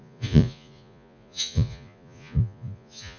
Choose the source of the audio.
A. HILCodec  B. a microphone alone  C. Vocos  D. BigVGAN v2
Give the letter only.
C